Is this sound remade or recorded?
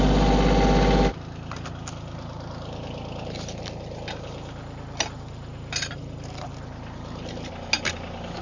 recorded